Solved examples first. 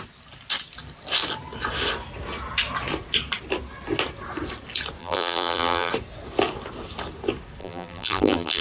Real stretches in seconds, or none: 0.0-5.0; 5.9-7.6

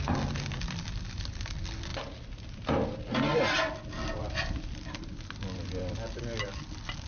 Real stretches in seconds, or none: none

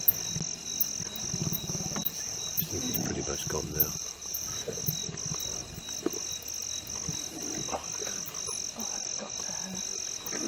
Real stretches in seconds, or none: 0.0-1.4; 4.8-10.5